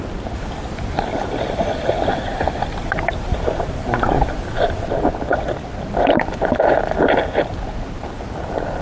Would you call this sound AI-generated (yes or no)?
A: no